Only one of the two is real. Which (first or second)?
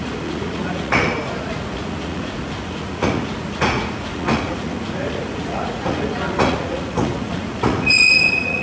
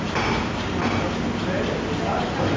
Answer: second